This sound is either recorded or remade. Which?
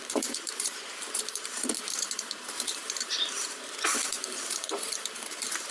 remade